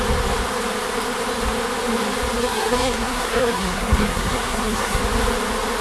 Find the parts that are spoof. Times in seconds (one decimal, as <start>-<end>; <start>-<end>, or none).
2.4-5.0

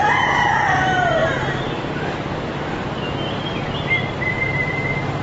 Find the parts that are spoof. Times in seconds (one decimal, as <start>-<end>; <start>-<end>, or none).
none

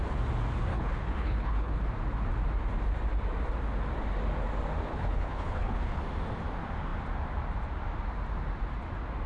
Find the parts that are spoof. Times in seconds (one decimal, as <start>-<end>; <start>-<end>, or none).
0.7-1.8; 4.9-6.0

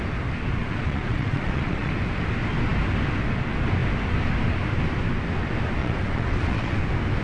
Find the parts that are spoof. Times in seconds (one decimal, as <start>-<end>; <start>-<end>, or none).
0.6-1.9; 5.8-6.8

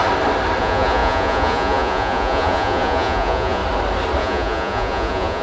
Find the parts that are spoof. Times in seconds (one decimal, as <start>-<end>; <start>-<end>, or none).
0.6-3.6; 4.2-5.4

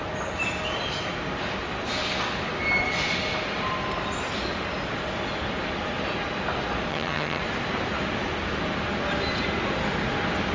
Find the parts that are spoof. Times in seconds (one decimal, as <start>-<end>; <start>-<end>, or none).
6.9-7.4